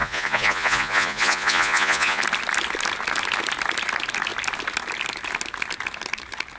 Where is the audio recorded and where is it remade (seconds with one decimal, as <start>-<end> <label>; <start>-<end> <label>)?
0.0-2.2 remade; 2.2-6.6 recorded